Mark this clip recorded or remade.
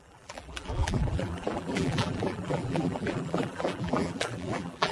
remade